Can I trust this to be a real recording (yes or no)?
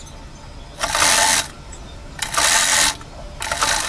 yes